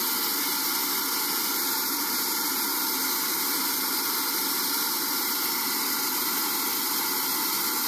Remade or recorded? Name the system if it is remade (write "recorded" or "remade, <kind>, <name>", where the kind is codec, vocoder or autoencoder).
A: recorded